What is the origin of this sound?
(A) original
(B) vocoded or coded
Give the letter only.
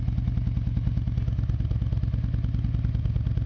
A